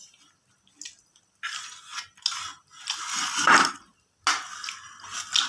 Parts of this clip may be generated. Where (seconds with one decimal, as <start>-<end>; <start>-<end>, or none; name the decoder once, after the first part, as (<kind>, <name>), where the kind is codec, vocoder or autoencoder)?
none